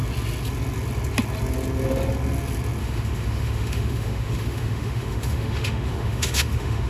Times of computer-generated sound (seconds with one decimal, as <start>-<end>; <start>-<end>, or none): 2.8-6.9